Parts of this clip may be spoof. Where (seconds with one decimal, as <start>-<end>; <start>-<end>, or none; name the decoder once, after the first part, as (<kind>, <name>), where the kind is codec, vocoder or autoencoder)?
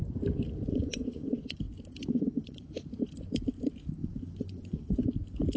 0.7-1.6 (vocoder, Vocos); 2.0-2.7; 4.0-5.0